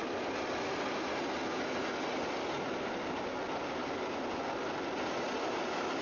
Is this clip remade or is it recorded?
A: recorded